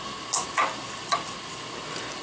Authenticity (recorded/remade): recorded